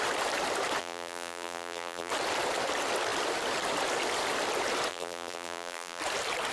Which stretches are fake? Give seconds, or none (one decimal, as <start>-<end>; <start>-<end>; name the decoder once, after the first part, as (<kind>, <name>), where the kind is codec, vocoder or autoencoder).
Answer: 0.8-2.1 (vocoder, BigVGAN v2); 4.9-6.0